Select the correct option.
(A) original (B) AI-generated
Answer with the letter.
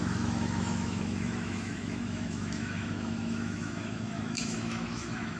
B